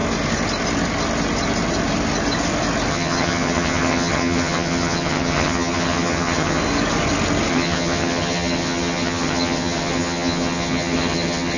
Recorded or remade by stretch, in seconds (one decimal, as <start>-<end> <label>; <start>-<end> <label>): 0.0-2.9 recorded; 2.9-6.6 remade; 6.6-7.5 recorded; 7.5-11.6 remade